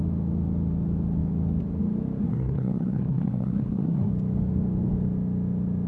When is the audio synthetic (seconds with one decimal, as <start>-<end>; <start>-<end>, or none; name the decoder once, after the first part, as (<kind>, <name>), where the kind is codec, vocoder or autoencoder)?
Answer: 2.2-4.1 (codec, SNAC)